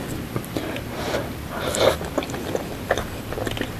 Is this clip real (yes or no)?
yes